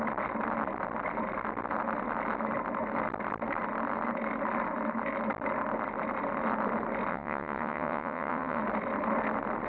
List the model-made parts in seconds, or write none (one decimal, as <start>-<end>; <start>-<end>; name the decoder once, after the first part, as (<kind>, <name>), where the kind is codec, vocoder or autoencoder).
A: 7.1-8.6 (vocoder, WaveNeXt)

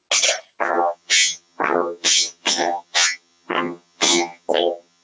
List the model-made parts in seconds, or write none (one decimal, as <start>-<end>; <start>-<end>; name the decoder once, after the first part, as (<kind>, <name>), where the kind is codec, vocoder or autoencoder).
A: 0.6-5.0 (vocoder, HiFi-GAN)

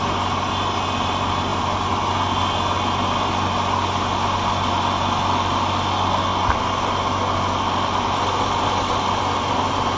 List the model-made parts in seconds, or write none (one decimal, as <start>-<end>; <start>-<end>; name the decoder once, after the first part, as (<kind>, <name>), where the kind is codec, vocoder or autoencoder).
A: none

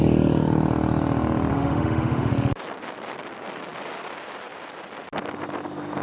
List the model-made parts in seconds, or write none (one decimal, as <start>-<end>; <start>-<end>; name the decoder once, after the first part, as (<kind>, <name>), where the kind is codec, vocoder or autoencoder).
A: 1.5-2.3 (autoencoder, DAC-VAE)

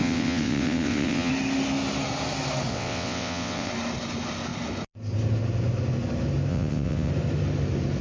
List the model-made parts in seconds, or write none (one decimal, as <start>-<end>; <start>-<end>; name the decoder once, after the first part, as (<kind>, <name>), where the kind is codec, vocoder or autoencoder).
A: 0.0-1.3 (vocoder, WaveNeXt); 2.7-3.7; 6.5-7.1

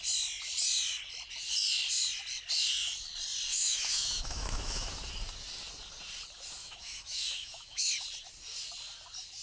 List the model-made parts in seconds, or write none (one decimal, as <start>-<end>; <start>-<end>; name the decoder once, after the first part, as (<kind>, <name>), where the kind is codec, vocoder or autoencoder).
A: 3.5-4.9 (autoencoder, DAC-VAE); 6.6-7.9

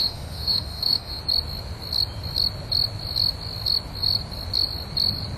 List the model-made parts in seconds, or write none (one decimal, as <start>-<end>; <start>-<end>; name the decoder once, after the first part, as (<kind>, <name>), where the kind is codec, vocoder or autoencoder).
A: 0.0-1.2 (autoencoder, DAC-VAE)

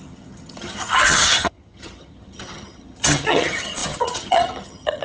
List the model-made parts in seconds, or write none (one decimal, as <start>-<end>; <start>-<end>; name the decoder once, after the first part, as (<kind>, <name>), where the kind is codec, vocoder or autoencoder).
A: 0.0-5.0 (vocoder, HiFi-GAN)